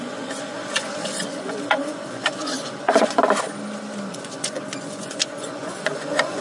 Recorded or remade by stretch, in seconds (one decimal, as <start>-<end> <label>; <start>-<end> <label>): 0.0-3.2 remade; 3.2-4.1 recorded; 4.1-6.4 remade